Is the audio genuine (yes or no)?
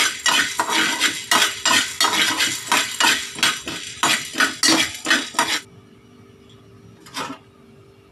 yes